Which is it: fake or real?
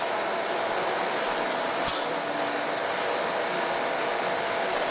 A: real